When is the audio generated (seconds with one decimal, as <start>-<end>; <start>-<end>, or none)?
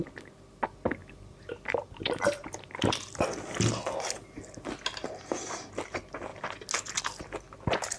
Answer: 1.0-3.2